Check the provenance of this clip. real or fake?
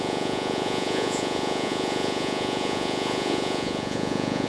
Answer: fake